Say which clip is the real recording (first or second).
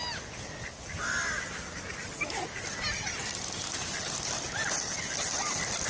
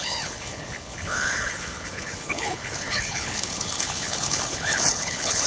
first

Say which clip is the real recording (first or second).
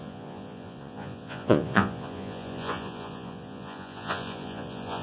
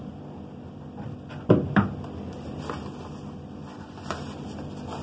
second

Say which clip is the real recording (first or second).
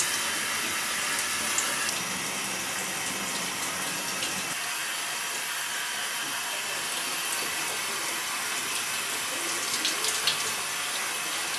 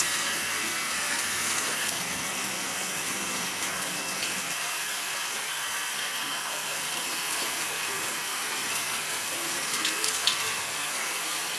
first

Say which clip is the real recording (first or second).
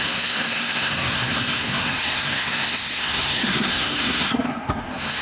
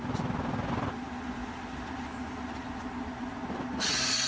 second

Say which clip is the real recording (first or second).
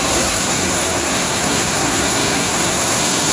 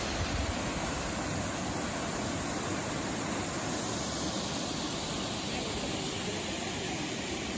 second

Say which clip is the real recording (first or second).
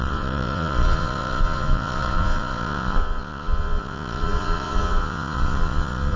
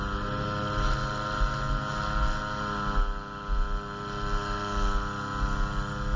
second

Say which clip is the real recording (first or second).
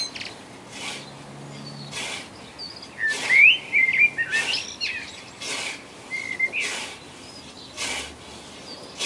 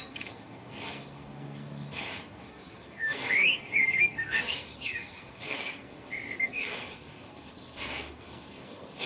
first